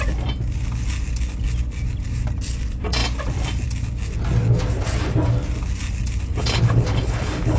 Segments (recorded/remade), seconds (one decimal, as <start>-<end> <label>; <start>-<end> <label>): 0.0-6.3 recorded; 6.3-7.6 remade